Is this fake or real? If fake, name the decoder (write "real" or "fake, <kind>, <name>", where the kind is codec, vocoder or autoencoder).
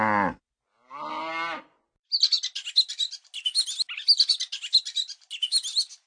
real